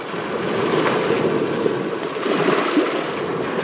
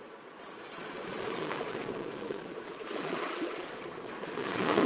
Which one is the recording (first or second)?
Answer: first